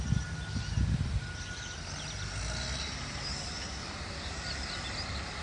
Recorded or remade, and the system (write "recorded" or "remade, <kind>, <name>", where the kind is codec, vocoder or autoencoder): recorded